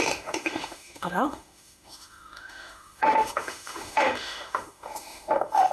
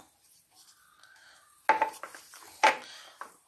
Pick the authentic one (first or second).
second